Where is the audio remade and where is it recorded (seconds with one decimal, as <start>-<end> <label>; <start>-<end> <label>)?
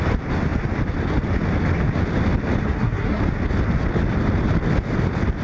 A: 0.0-2.6 recorded; 2.6-3.2 remade; 3.2-5.4 recorded